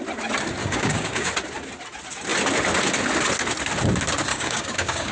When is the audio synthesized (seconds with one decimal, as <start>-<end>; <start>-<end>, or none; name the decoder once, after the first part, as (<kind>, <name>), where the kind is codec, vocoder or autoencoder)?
0.6-1.3 (codec, DAC); 4.3-5.1